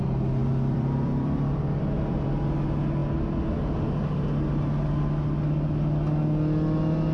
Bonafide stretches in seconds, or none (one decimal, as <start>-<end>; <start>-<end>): 0.0-0.4; 2.4-7.1